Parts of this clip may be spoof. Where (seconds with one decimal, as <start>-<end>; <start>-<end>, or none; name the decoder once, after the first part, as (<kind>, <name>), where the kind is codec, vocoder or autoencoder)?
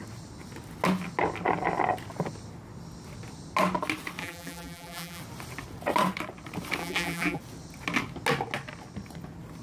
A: 4.2-5.2 (vocoder, BigVGAN v2); 6.8-7.4